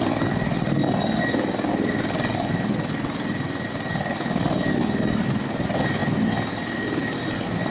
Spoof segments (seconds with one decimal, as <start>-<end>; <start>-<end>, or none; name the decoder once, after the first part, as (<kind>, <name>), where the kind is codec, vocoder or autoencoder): none